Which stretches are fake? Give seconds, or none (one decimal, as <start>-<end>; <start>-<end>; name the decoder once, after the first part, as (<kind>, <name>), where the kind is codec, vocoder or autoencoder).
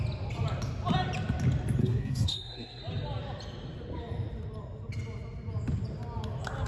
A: 1.8-2.8 (codec, SNAC)